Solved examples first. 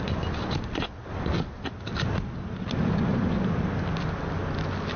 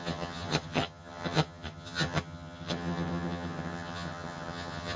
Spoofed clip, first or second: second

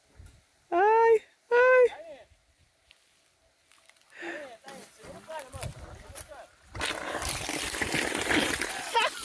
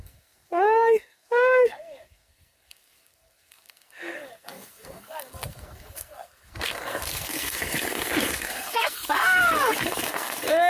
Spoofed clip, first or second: second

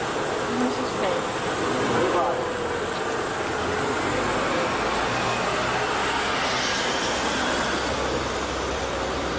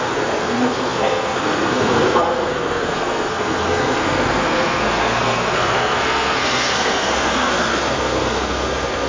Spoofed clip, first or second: second